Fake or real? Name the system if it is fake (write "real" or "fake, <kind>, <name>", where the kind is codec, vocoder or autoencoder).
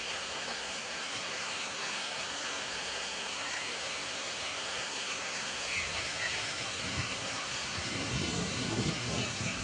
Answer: fake, codec, SNAC